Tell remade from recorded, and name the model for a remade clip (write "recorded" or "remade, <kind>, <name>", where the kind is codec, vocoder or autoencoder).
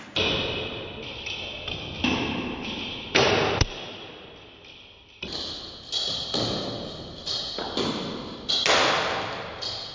recorded